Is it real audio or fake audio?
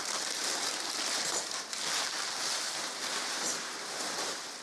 real